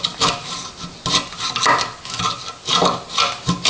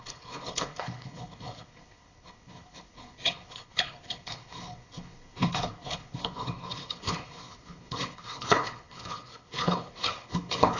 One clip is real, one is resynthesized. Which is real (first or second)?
first